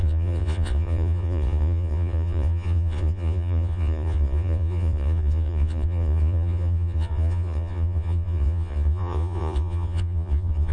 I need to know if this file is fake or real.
fake